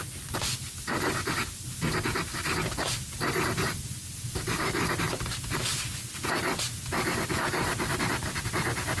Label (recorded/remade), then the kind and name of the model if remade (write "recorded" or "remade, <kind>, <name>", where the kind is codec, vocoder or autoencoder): recorded